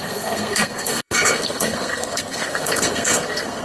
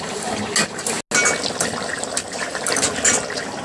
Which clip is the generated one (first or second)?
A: first